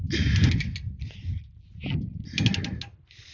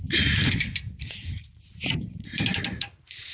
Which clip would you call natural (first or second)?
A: first